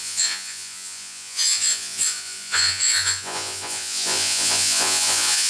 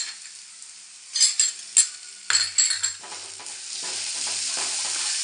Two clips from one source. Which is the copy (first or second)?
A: first